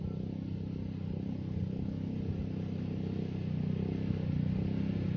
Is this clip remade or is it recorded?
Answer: recorded